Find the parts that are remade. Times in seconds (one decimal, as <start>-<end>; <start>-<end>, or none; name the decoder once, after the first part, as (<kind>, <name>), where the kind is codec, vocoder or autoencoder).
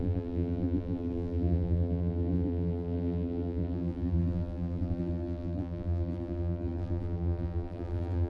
0.0-8.3 (vocoder, BigVGAN v2)